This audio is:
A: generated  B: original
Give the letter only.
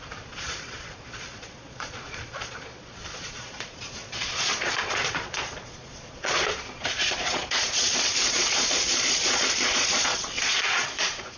A